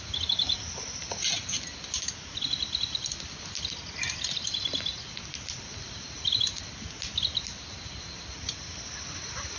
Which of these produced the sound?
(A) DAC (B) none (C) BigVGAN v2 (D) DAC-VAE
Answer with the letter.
B